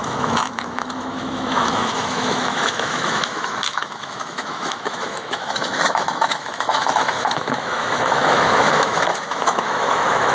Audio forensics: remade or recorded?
remade